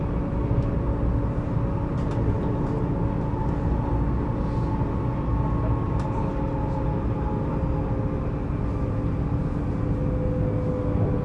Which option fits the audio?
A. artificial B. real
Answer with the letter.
B